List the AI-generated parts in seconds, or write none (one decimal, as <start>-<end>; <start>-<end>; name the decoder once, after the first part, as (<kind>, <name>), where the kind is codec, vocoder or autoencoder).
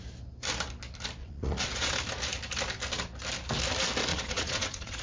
1.2-1.9 (vocoder, Vocos); 4.1-5.0